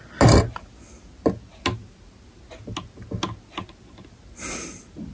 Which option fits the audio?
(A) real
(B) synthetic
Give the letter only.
A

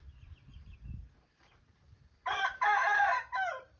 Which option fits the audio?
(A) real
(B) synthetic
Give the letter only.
B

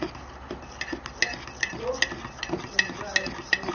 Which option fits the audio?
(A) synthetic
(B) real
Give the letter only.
B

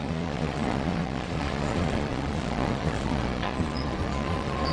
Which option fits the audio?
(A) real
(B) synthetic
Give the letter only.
B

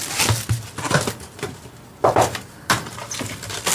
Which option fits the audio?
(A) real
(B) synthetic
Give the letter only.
A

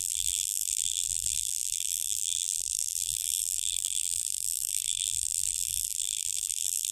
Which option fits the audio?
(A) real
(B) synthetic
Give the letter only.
B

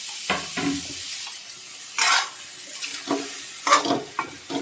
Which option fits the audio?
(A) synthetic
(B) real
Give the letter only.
B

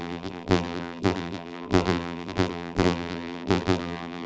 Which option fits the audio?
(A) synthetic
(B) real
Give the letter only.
A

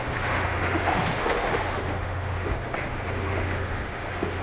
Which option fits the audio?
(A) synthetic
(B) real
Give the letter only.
A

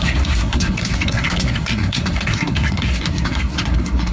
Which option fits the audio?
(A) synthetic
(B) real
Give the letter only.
A